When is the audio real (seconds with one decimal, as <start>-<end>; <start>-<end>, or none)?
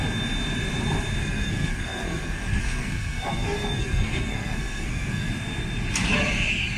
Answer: 0.0-1.2; 5.3-6.8